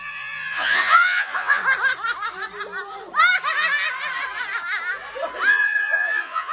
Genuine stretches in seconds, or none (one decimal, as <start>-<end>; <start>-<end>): 1.6-5.5